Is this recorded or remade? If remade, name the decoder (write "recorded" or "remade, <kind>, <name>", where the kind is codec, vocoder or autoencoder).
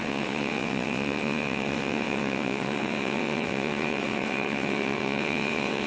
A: remade, vocoder, WaveNeXt